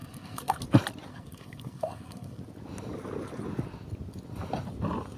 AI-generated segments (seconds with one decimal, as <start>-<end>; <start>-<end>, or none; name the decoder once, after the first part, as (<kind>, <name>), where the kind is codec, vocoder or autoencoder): 0.0-0.6 (codec, SNAC); 1.1-2.4